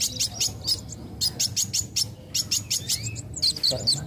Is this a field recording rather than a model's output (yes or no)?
yes